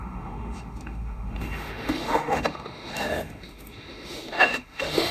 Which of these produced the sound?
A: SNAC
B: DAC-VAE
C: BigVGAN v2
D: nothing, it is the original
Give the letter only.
B